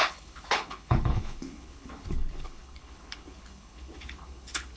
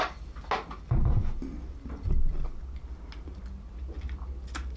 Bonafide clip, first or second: second